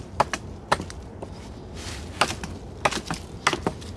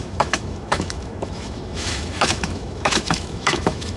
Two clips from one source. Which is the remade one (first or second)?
second